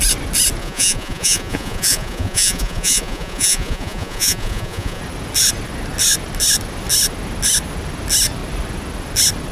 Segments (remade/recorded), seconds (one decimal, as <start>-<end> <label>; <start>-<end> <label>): 0.0-0.6 recorded; 0.6-5.0 remade; 5.0-9.5 recorded